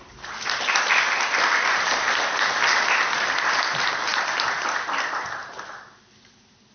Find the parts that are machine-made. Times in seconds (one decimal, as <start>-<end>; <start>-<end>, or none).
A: 0.0-6.7